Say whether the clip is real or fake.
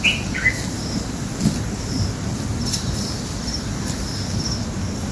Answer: real